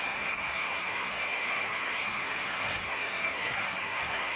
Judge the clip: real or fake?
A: fake